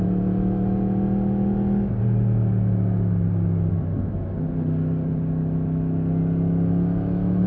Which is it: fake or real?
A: real